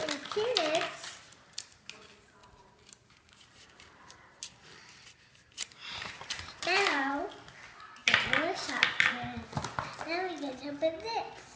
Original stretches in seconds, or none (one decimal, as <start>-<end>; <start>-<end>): 0.0-2.4; 7.2-11.6